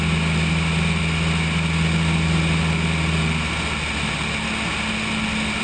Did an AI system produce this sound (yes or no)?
no